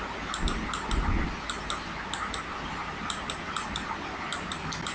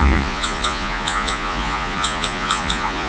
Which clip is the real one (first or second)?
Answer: first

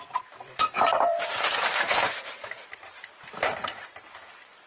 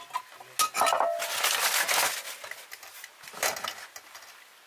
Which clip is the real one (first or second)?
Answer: second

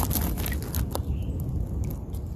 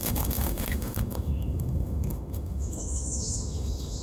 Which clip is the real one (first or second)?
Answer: first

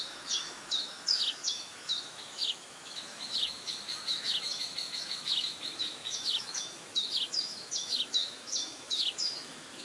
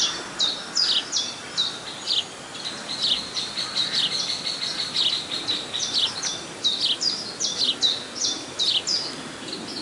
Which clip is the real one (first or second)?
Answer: second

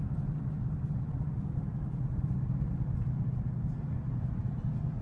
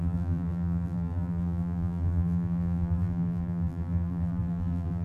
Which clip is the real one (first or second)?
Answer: first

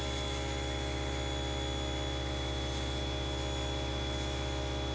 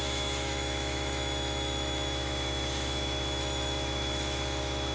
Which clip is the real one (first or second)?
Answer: first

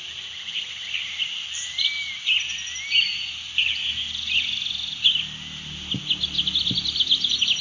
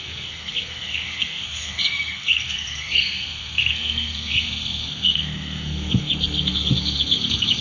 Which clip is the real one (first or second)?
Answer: first